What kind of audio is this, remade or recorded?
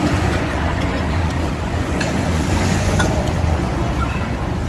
remade